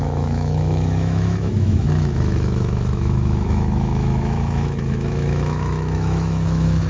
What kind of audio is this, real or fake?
fake